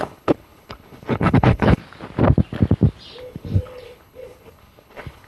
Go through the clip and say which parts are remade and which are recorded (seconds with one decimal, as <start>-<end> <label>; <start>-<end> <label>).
0.0-1.8 remade; 1.8-3.2 recorded; 3.2-5.3 remade